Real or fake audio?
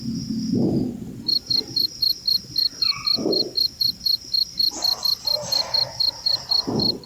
fake